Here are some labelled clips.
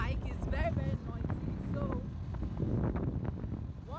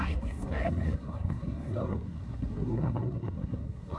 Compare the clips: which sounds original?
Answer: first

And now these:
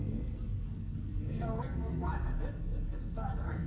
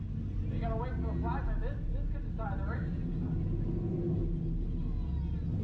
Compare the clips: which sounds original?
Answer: second